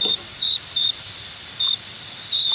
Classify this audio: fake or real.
fake